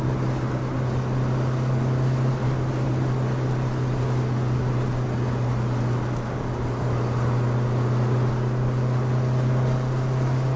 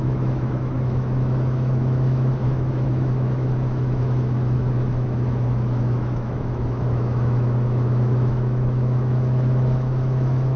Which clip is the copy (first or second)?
second